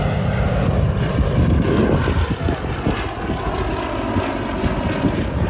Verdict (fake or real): real